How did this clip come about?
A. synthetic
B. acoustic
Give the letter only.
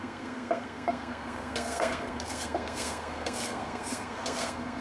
A